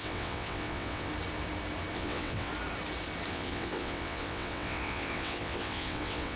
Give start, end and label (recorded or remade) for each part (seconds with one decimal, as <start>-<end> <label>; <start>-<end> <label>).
0.0-1.1 remade; 1.1-1.9 recorded; 1.9-2.5 remade; 2.5-3.3 recorded; 3.3-6.4 remade